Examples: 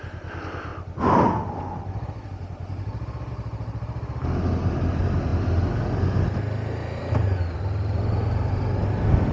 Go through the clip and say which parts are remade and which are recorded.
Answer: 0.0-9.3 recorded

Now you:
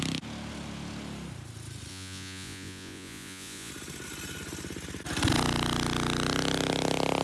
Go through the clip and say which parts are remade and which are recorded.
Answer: 0.0-1.9 recorded; 1.9-3.7 remade; 3.7-7.2 recorded

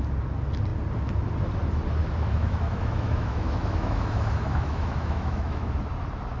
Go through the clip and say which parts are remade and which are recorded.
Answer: 0.0-2.0 recorded; 2.0-5.8 remade; 5.8-6.4 recorded